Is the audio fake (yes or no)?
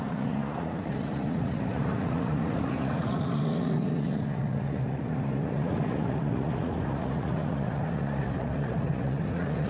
yes